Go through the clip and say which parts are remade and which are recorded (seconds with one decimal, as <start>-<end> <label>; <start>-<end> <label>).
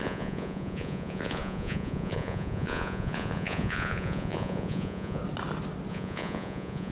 0.0-5.2 remade; 5.2-5.9 recorded; 5.9-6.9 remade